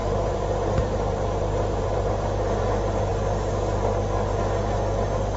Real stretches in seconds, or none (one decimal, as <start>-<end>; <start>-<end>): 2.1-5.4